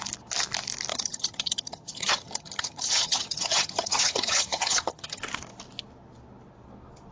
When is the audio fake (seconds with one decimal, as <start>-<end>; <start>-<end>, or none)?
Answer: 0.9-5.2